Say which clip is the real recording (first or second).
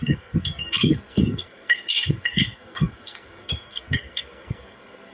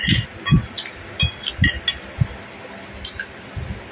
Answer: second